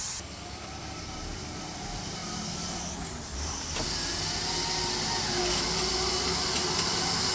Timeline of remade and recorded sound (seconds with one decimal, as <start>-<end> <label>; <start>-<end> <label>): 0.0-7.3 recorded